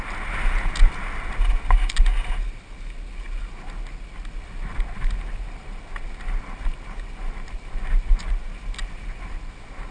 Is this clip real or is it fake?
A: real